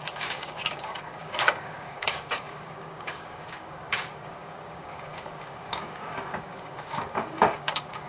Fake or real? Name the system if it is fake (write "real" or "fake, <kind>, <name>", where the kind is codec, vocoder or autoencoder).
fake, codec, DAC